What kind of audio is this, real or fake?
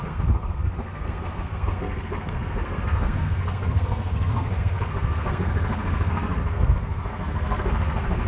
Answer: fake